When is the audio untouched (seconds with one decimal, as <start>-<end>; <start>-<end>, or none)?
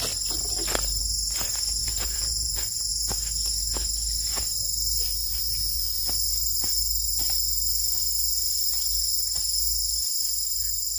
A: 0.0-1.8; 2.9-11.0